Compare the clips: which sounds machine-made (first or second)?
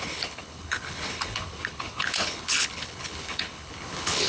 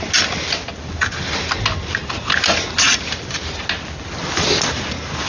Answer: first